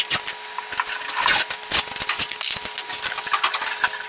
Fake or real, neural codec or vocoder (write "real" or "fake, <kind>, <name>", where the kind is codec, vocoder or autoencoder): real